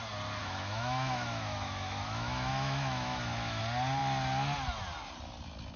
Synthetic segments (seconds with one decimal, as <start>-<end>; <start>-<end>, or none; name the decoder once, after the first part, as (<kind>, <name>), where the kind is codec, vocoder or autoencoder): 0.4-3.6 (autoencoder, DAC-VAE)